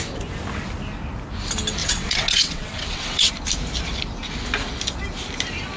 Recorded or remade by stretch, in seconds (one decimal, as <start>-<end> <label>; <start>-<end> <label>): 0.0-1.8 recorded; 1.8-3.3 remade; 3.3-5.8 recorded

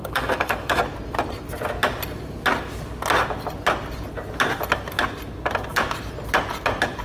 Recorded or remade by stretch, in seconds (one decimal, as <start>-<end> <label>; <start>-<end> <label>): 0.0-0.8 remade; 0.8-7.0 recorded

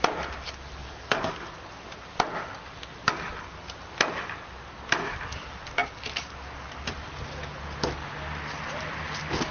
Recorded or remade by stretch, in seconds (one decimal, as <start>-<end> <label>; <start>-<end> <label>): 0.0-0.8 recorded; 0.8-1.5 remade; 1.5-9.5 recorded

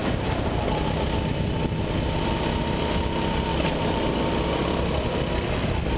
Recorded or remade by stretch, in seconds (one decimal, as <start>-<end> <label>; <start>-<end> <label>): 0.0-3.5 recorded; 3.5-4.2 remade; 4.2-6.0 recorded